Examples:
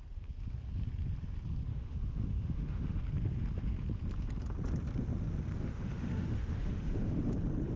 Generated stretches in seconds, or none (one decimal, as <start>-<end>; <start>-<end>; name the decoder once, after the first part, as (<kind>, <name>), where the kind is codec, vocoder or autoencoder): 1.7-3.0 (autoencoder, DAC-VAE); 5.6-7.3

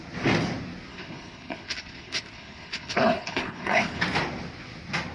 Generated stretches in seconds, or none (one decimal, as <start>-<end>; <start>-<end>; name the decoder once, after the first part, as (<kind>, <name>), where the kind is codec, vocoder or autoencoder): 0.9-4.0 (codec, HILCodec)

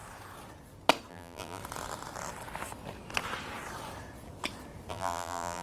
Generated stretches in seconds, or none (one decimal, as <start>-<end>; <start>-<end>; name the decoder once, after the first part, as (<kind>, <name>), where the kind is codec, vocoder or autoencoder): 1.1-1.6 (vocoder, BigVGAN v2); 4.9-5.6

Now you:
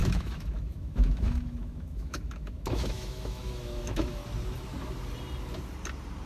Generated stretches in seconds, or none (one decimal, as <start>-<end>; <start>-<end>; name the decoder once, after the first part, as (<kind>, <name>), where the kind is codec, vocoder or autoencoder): 0.0-4.2 (autoencoder, DAC-VAE)

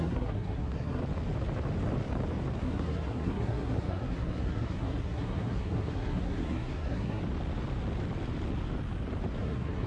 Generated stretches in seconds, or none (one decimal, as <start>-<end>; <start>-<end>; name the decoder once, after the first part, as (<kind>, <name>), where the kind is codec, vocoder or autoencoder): 0.0-1.0 (codec, SNAC); 2.6-7.2; 9.4-9.9

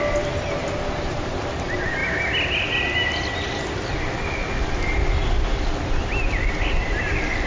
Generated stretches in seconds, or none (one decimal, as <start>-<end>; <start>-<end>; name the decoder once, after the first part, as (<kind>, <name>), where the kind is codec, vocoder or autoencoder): none

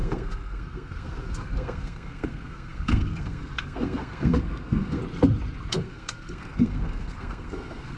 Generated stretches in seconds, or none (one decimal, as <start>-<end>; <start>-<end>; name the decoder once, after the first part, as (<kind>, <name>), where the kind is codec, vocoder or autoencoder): 0.0-5.0 (codec, SNAC); 5.7-8.0